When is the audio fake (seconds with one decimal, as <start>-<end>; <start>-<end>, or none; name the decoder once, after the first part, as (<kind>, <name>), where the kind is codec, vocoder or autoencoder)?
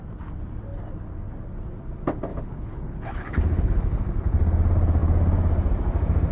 2.3-4.0 (codec, HILCodec)